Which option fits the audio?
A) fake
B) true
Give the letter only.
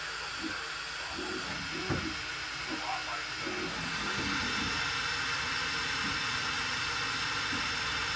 B